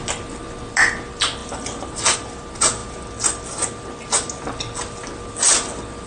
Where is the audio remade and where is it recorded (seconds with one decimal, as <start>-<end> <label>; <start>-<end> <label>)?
0.0-6.1 recorded